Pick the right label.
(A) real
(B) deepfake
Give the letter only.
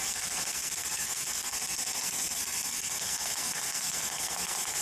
B